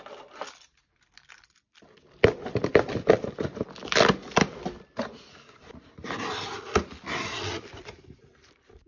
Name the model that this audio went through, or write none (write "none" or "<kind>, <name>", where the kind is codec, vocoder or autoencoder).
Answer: none